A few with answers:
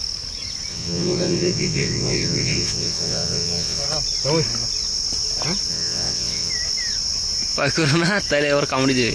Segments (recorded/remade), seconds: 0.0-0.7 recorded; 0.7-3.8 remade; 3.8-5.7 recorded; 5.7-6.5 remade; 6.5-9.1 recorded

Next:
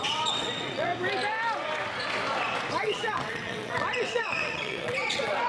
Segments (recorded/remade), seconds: 0.0-0.9 remade; 0.9-2.7 recorded; 2.7-5.5 remade

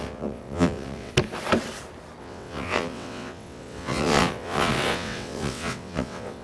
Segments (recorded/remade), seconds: 0.0-1.1 remade; 1.1-2.2 recorded; 2.2-6.4 remade

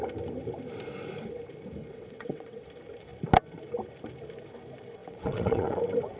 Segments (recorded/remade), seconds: 0.0-1.8 recorded; 1.8-2.7 remade; 2.7-5.0 recorded; 5.0-5.8 remade; 5.8-6.2 recorded

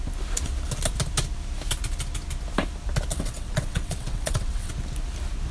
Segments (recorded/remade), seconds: 0.0-3.1 recorded; 3.1-4.7 remade; 4.7-5.5 recorded

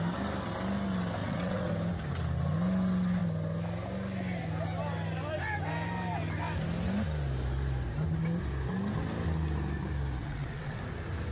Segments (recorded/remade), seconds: 0.0-1.2 recorded; 1.2-1.7 remade; 1.7-10.2 recorded; 10.2-10.8 remade; 10.8-11.3 recorded

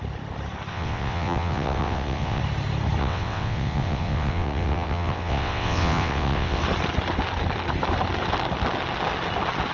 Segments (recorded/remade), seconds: 0.0-0.7 recorded; 0.7-2.4 remade; 2.4-3.0 recorded; 3.0-6.6 remade; 6.6-9.7 recorded

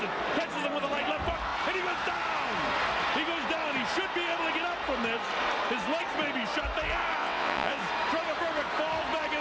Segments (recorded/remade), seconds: 0.0-7.2 recorded; 7.2-7.8 remade; 7.8-9.4 recorded